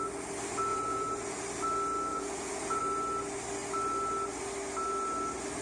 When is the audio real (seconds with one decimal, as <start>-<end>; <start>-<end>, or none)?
0.0-0.7; 1.4-2.1; 2.8-5.6